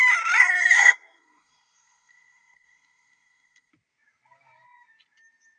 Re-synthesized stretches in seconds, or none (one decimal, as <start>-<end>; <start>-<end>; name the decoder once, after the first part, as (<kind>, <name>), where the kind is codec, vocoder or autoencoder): 0.4-3.7 (codec, SNAC)